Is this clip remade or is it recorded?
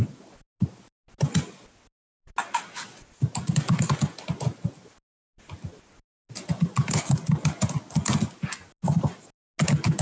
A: recorded